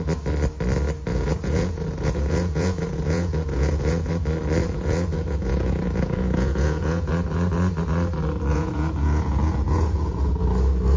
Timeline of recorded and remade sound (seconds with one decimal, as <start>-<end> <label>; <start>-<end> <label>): 0.0-1.1 recorded; 1.1-4.1 remade; 4.1-4.6 recorded; 4.6-7.1 remade; 7.1-8.5 recorded; 8.5-10.3 remade; 10.3-11.0 recorded